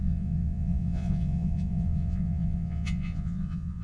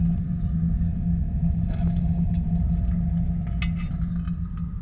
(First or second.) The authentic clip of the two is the second